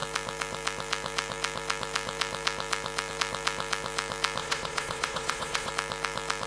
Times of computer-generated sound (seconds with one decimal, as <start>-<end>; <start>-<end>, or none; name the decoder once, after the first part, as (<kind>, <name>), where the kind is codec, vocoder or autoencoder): 4.4-5.7 (vocoder, Vocos)